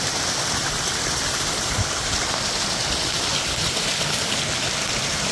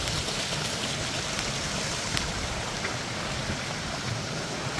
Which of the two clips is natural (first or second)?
second